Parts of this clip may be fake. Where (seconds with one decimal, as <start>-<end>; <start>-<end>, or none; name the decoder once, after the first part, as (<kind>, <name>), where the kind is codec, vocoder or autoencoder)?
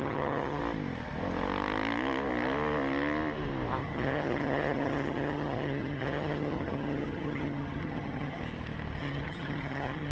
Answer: 0.0-0.6 (vocoder, HiFi-GAN); 3.8-8.4; 9.0-10.1